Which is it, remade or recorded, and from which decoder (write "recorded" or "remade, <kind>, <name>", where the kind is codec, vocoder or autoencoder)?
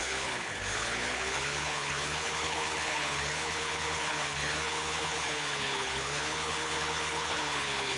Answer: remade, codec, HILCodec